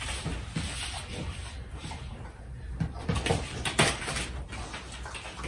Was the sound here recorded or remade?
recorded